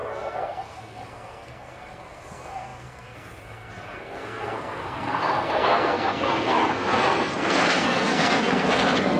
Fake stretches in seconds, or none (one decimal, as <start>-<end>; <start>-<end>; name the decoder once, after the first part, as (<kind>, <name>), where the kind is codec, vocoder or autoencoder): 0.0-9.2 (codec, SNAC)